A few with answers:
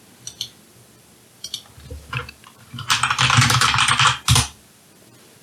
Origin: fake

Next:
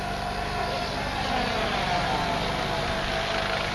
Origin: real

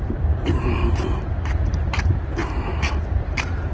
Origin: fake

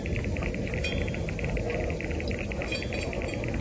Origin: real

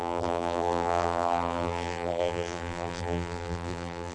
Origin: fake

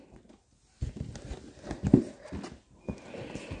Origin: real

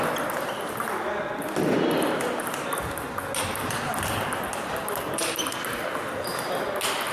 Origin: real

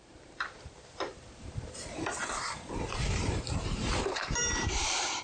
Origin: fake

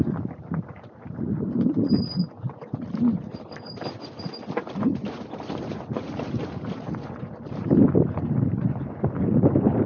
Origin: fake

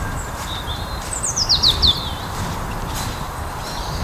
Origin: fake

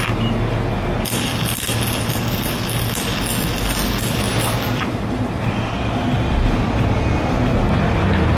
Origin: real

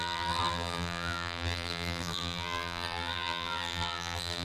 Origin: fake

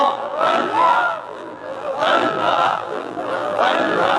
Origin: fake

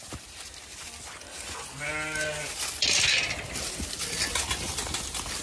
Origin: real